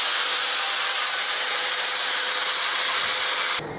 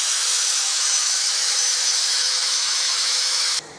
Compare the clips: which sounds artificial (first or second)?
second